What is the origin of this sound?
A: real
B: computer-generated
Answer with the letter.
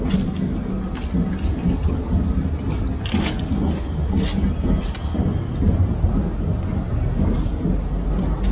A